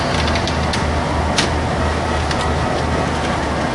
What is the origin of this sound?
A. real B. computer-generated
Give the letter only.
A